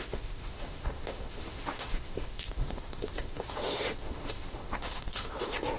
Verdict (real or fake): fake